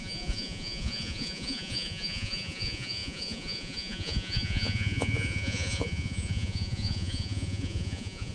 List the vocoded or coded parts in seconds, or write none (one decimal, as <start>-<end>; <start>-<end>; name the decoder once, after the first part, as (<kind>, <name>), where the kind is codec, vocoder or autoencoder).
0.0-8.3 (vocoder, Vocos)